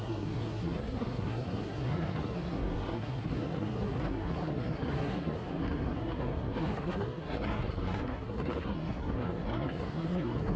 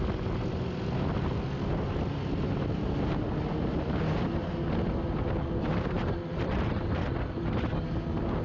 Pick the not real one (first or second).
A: first